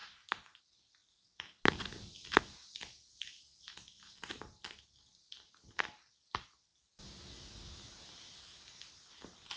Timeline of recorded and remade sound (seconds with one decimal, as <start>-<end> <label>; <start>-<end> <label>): 0.0-9.6 recorded